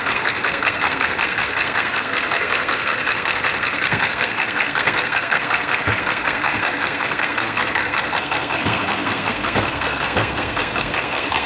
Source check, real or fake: fake